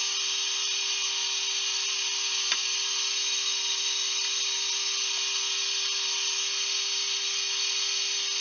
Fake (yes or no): no